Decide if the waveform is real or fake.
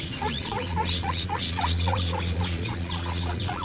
fake